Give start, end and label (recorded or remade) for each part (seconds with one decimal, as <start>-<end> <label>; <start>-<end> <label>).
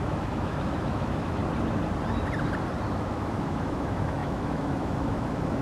0.0-1.4 remade; 1.4-2.9 recorded; 2.9-5.6 remade